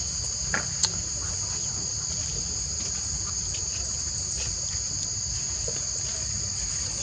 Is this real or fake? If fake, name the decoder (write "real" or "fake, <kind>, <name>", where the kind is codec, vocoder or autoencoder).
real